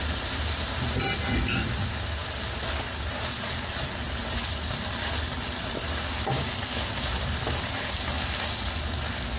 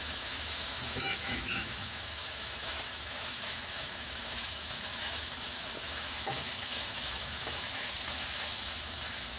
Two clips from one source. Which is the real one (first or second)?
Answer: first